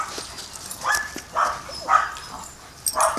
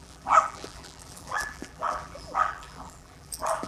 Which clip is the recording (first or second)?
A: first